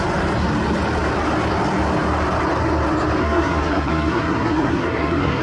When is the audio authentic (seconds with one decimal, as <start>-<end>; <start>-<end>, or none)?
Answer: 0.0-3.2